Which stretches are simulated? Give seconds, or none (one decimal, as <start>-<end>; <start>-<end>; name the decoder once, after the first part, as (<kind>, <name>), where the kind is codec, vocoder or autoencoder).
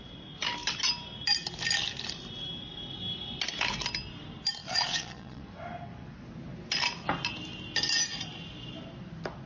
4.6-5.4 (vocoder, Vocos)